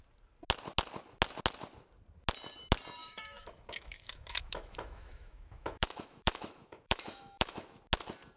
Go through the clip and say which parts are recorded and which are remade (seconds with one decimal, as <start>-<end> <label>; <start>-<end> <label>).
0.0-3.0 recorded; 3.0-7.8 remade; 7.8-8.4 recorded